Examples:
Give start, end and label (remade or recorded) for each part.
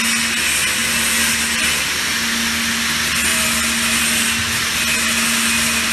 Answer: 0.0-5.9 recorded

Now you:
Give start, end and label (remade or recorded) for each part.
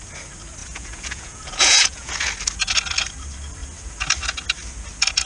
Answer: 0.0-0.6 recorded; 0.6-2.1 remade; 2.1-5.3 recorded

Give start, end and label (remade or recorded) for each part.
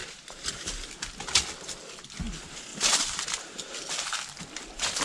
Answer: 0.0-1.0 remade; 1.0-2.7 recorded; 2.7-3.5 remade; 3.5-5.0 recorded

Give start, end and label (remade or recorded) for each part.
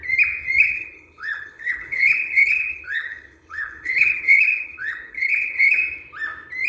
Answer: 0.0-0.6 recorded; 0.6-5.8 remade; 5.8-6.7 recorded